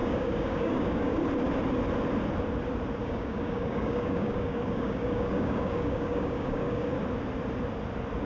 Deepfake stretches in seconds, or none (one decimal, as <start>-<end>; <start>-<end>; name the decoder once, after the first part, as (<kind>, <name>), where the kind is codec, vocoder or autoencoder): 0.0-1.2 (codec, DAC); 3.0-6.9